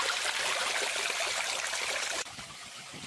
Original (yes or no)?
no